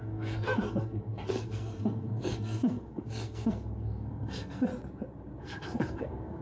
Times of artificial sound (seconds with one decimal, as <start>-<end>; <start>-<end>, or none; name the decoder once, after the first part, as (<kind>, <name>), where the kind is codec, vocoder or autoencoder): 0.0-4.7 (codec, SNAC); 5.4-6.4